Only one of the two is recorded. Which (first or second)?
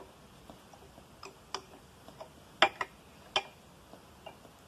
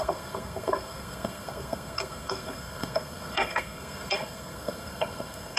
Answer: first